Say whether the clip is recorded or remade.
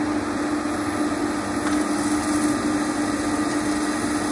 recorded